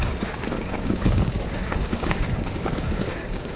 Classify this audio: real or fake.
fake